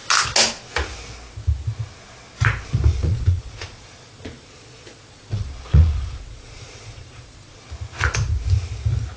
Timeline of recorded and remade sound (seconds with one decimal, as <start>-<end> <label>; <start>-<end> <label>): 0.0-2.9 recorded; 2.9-7.6 remade; 7.6-9.2 recorded